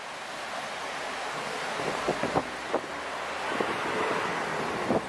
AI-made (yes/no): no